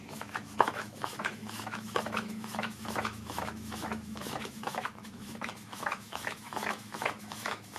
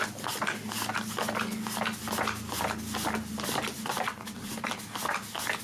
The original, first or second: second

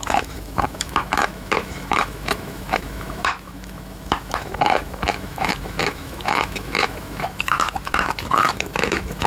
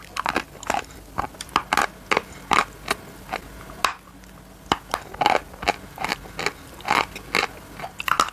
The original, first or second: second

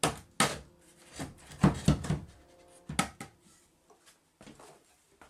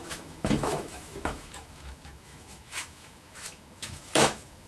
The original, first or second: first